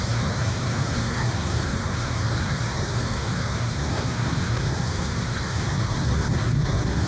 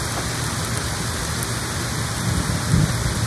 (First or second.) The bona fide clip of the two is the second